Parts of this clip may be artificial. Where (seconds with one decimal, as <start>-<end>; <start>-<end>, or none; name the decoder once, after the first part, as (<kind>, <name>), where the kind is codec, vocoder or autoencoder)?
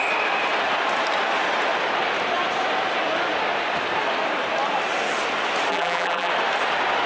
5.7-6.3 (vocoder, BigVGAN v2)